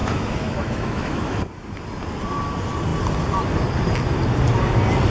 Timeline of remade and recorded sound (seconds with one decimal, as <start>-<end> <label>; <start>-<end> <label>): 0.0-1.5 remade; 1.5-5.1 recorded